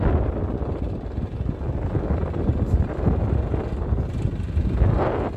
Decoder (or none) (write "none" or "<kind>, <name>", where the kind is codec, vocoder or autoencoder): none